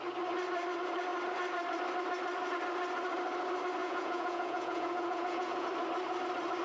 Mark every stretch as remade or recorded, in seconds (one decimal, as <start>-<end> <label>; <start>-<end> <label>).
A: 0.0-3.8 recorded; 3.8-5.7 remade; 5.7-6.6 recorded